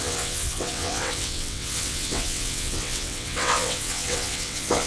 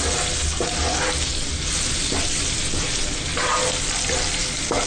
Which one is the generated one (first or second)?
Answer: first